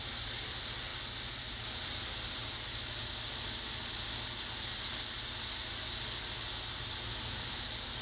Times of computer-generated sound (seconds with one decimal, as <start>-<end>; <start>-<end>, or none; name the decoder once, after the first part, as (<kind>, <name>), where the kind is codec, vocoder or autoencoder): none